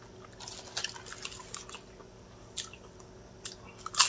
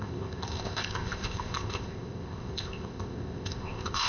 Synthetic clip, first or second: second